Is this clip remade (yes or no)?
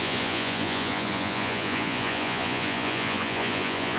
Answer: yes